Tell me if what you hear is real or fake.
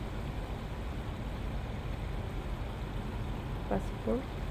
real